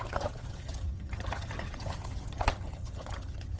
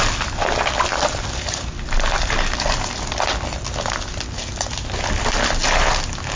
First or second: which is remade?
first